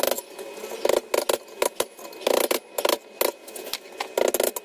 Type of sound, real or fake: real